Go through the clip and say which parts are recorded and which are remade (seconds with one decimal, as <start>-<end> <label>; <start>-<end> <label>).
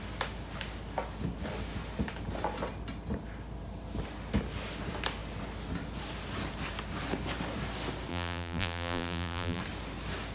0.0-8.1 recorded; 8.1-9.6 remade; 9.6-10.3 recorded